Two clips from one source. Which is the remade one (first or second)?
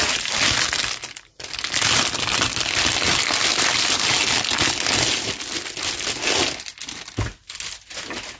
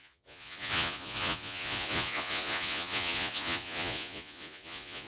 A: second